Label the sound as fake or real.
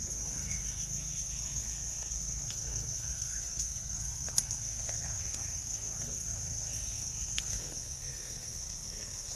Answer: fake